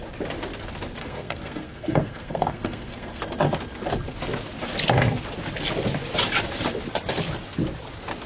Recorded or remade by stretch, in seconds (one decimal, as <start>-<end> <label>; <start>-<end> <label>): 0.0-1.0 recorded; 1.0-3.2 remade; 3.2-8.3 recorded